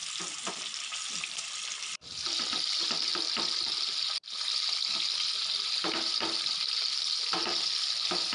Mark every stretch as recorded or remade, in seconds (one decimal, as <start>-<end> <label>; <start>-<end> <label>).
0.0-8.3 remade